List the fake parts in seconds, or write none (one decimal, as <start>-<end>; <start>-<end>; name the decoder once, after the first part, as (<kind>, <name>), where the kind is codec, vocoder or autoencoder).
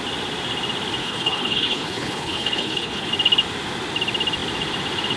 1.0-3.1 (codec, HILCodec)